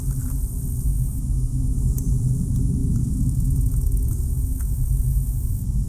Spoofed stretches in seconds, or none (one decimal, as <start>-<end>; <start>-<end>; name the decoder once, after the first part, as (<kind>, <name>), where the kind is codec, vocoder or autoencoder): 0.9-1.9 (autoencoder, DAC-VAE); 2.8-5.9